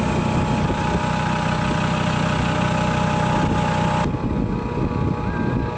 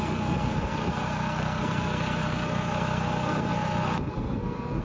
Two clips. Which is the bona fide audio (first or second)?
first